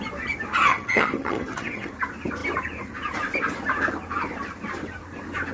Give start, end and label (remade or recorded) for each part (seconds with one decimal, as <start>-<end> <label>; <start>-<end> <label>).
0.0-0.7 recorded; 0.7-1.9 remade; 1.9-5.5 recorded